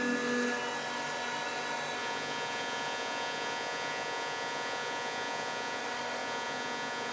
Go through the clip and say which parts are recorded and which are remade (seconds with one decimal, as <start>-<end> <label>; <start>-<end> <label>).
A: 0.0-2.0 recorded; 2.0-5.8 remade; 5.8-6.2 recorded; 6.2-7.1 remade